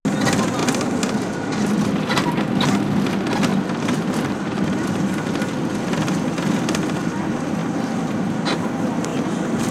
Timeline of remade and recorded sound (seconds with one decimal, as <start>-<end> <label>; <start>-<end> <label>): 0.0-3.5 recorded; 3.5-4.9 remade; 4.9-9.1 recorded; 9.1-9.7 remade